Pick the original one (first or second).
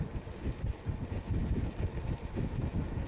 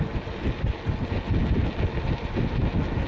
second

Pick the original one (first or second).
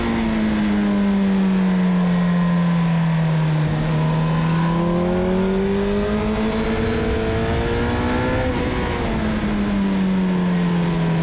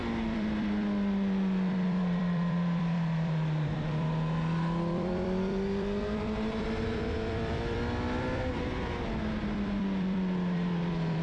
first